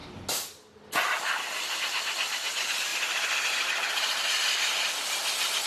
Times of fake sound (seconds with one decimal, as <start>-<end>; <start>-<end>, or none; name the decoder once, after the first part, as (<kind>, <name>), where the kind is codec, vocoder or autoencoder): none